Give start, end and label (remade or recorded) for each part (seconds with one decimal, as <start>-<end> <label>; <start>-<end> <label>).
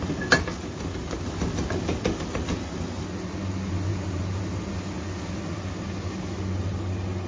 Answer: 0.0-3.9 recorded; 3.9-4.6 remade; 4.6-7.3 recorded